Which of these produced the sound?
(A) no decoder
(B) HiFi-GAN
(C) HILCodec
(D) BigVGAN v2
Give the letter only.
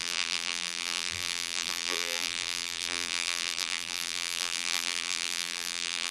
D